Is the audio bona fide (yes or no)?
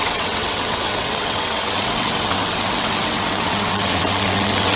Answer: no